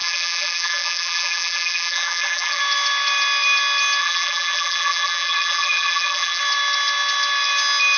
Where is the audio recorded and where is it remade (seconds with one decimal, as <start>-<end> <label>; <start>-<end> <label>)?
0.0-2.6 remade; 2.6-4.0 recorded; 4.0-6.4 remade; 6.4-8.0 recorded